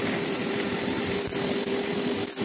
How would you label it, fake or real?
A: real